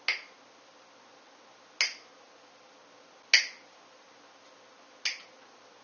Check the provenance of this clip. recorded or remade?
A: recorded